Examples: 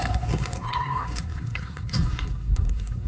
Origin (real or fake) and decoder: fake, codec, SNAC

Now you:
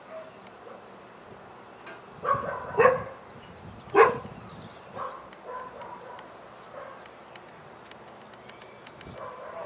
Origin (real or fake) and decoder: real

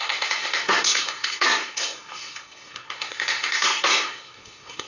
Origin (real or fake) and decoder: fake, codec, SNAC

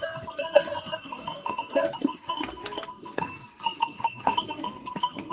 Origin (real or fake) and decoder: fake, codec, SNAC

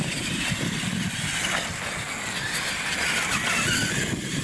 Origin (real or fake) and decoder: real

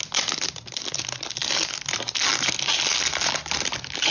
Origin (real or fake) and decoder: real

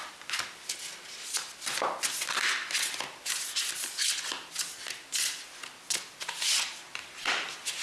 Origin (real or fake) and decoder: real